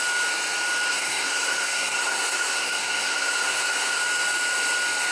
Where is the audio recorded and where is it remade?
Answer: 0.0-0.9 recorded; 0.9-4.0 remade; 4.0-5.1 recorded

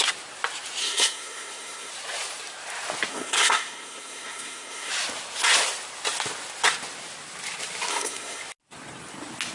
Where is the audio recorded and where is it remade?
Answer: 0.0-0.8 recorded; 0.8-1.9 remade; 1.9-3.1 recorded; 3.1-4.9 remade; 4.9-7.9 recorded; 7.9-8.4 remade; 8.4-9.5 recorded

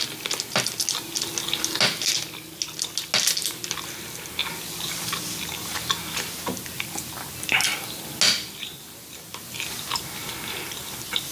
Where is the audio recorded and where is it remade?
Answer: 0.0-11.3 recorded

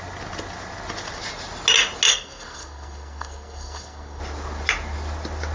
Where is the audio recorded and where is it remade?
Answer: 0.0-2.1 recorded; 2.1-4.2 remade; 4.2-5.5 recorded

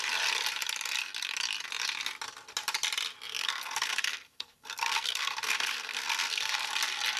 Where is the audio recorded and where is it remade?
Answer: 0.0-3.3 recorded; 3.3-6.7 remade; 6.7-7.2 recorded

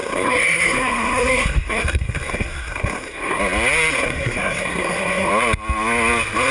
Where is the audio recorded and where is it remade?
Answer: 0.0-3.4 remade; 3.4-4.0 recorded; 4.0-5.3 remade; 5.3-6.5 recorded